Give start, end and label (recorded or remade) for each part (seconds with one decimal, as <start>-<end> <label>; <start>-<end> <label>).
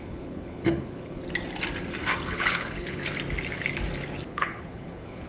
0.0-1.2 remade; 1.2-2.3 recorded; 2.3-3.0 remade; 3.0-4.3 recorded; 4.3-5.3 remade